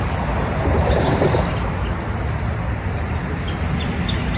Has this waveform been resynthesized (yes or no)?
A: no